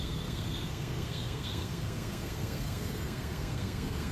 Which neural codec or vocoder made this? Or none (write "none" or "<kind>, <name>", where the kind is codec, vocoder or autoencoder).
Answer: codec, SNAC